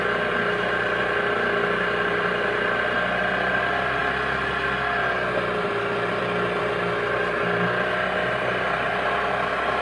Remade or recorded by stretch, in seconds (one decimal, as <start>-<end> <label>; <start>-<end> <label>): 0.0-9.8 recorded